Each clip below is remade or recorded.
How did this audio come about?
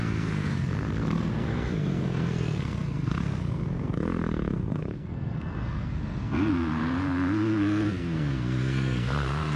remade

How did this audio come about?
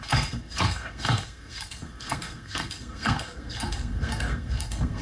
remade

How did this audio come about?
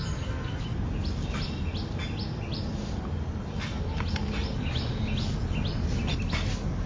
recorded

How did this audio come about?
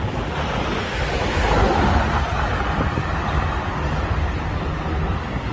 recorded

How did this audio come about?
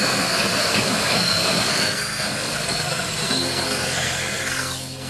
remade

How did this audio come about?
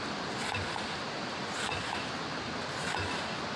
recorded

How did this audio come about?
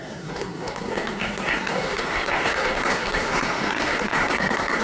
remade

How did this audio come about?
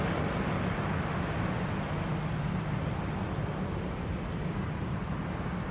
recorded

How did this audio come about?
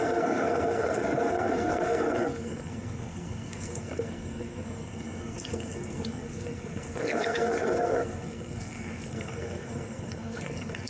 remade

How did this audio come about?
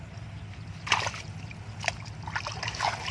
recorded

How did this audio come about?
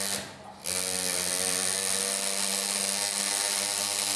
recorded